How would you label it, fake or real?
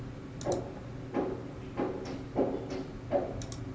real